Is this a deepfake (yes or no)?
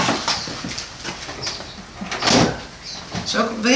no